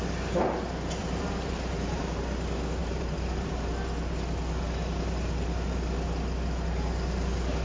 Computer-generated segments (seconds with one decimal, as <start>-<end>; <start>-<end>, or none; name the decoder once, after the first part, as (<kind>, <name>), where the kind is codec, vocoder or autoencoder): 1.0-2.0 (vocoder, BigVGAN v2); 2.8-3.7